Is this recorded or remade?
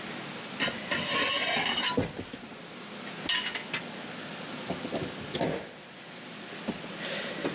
recorded